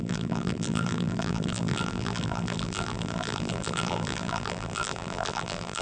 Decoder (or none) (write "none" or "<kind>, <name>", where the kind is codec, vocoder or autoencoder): vocoder, BigVGAN v2